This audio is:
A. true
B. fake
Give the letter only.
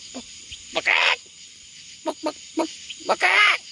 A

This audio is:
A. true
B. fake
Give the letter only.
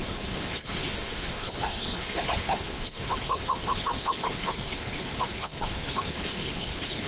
B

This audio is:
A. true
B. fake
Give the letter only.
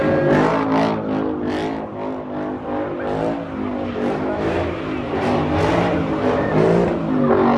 A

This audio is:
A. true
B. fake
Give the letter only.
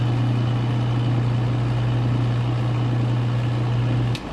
A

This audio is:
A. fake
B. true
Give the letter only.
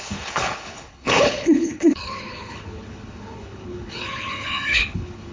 A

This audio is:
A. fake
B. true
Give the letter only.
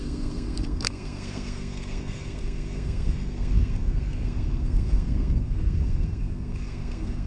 A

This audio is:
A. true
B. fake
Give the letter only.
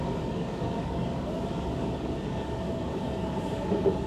B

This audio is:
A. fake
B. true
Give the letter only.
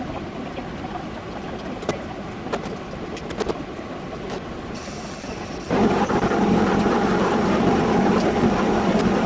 B